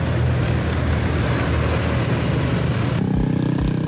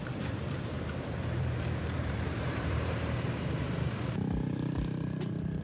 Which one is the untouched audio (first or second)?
first